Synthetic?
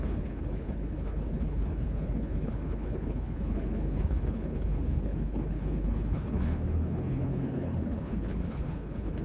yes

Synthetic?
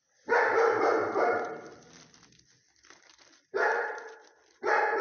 no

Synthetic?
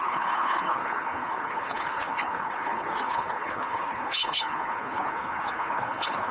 yes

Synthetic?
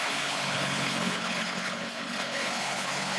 yes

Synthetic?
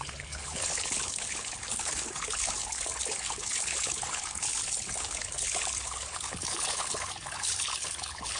yes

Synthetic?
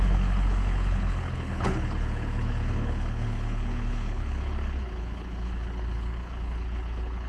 yes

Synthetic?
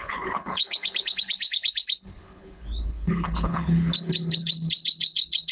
yes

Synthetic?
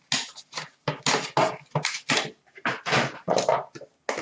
no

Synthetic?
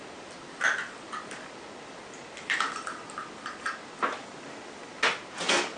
no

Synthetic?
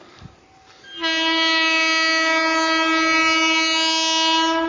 no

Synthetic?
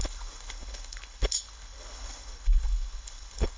yes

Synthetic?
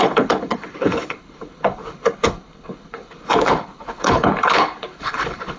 yes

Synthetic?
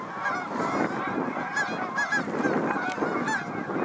no